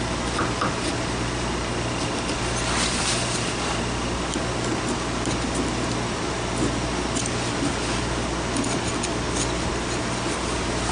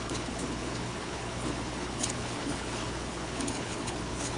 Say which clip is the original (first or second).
first